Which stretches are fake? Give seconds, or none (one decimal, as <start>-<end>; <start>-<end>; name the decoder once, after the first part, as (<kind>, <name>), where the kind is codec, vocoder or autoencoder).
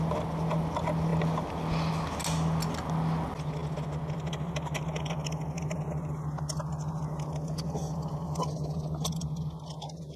none